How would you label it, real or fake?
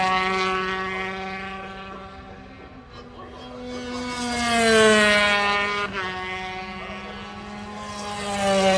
real